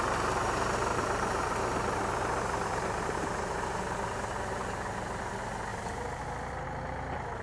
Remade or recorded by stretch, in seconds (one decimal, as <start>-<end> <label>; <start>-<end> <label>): 0.0-0.9 recorded; 0.9-5.3 remade; 5.3-5.7 recorded; 5.7-6.2 remade; 6.2-7.4 recorded